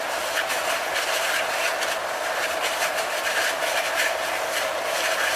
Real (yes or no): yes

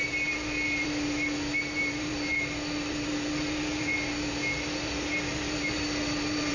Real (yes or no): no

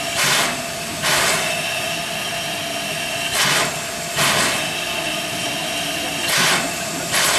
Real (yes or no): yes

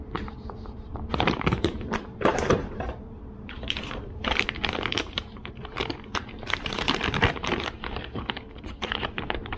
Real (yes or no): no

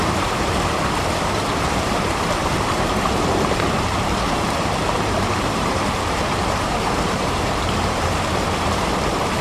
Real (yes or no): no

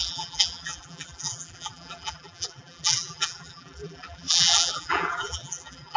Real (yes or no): no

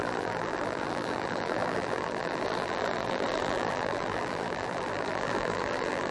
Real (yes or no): no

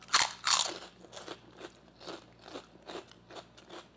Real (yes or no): yes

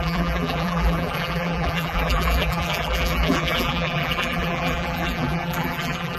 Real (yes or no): no